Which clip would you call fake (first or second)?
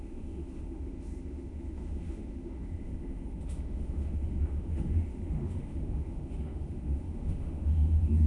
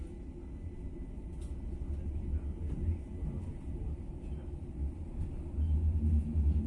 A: first